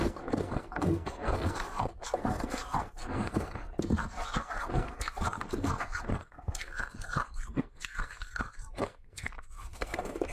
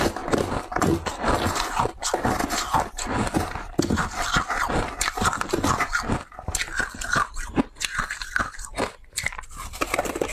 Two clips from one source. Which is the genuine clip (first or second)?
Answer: second